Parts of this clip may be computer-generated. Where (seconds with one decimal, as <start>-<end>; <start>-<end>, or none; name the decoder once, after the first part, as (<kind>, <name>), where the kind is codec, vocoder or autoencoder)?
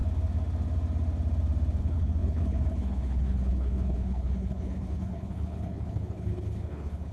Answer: 1.8-7.1 (codec, HILCodec)